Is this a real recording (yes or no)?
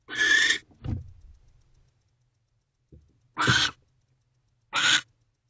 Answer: yes